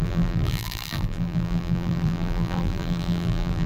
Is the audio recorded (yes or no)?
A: no